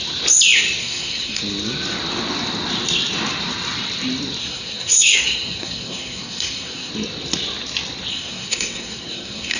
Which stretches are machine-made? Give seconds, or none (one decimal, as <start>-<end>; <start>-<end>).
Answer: 0.8-1.4; 4.4-6.9; 8.1-9.6